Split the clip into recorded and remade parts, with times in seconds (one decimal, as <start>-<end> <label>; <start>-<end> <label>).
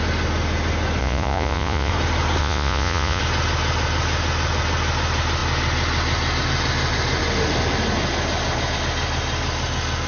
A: 0.0-1.0 recorded; 1.0-1.9 remade; 1.9-2.4 recorded; 2.4-3.2 remade; 3.2-10.1 recorded